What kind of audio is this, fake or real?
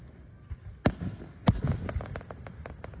real